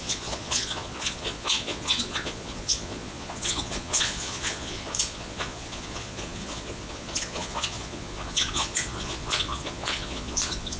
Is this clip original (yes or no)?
no